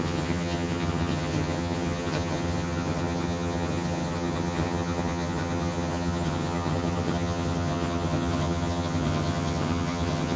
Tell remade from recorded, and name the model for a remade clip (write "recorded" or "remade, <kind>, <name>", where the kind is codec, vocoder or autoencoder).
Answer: remade, vocoder, HiFi-GAN